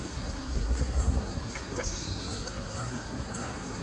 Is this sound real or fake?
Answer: fake